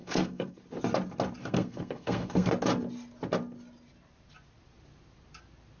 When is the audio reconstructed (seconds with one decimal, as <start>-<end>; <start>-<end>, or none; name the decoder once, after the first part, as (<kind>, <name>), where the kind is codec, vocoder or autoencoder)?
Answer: 0.0-0.6 (codec, SNAC); 1.4-2.5